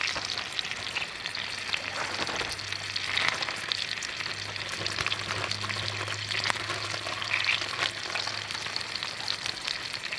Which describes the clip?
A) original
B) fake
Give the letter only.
A